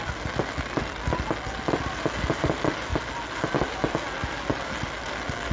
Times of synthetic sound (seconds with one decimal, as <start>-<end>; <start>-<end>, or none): none